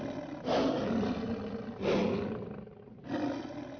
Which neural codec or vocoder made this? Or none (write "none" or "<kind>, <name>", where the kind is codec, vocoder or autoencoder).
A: none